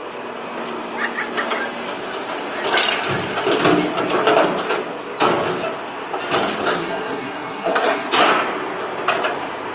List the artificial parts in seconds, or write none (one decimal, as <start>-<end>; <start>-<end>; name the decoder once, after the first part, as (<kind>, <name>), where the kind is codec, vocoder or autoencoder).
6.8-8.2 (codec, SNAC)